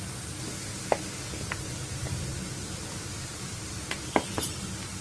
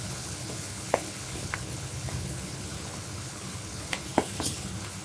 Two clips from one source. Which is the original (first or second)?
first